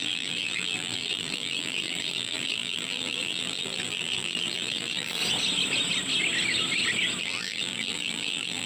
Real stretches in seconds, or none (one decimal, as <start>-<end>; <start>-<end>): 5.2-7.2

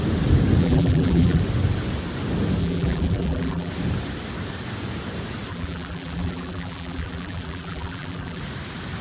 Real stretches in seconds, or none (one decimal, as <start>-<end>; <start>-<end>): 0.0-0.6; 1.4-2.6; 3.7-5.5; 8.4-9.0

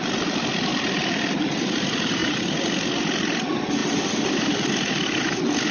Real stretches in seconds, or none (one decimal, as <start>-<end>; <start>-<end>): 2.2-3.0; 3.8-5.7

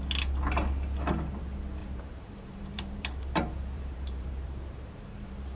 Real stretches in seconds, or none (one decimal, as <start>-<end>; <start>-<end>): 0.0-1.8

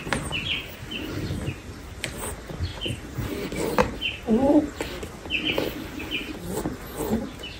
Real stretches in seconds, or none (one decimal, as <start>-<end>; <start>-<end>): 0.0-7.6

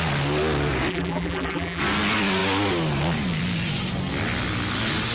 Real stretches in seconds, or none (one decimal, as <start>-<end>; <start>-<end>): 0.0-0.9; 1.8-5.1